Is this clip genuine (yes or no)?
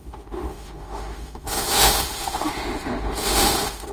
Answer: no